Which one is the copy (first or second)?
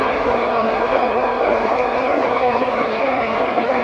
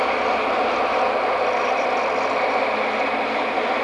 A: first